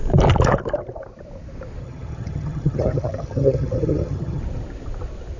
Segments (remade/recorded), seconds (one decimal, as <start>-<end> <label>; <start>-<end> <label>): 0.0-1.8 recorded; 1.8-4.4 remade; 4.4-5.4 recorded